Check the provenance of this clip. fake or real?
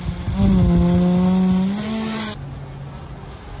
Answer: real